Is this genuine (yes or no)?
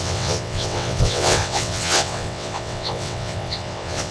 no